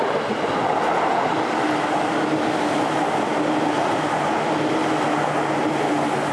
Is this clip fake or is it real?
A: real